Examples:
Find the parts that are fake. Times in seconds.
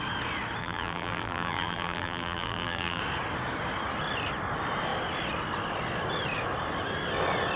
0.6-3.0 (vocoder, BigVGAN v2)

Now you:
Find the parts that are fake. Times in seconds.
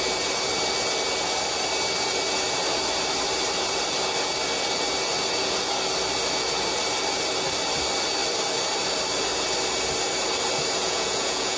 10.8-11.6 (vocoder, Vocos)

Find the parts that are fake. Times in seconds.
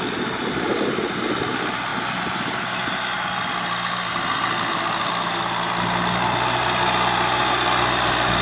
none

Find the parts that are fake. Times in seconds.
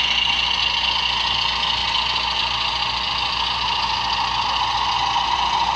none